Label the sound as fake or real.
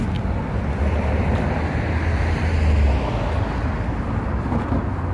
real